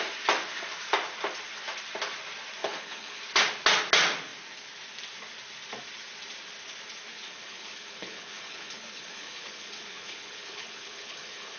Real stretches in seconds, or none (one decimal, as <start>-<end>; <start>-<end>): 0.0-2.6; 3.2-7.1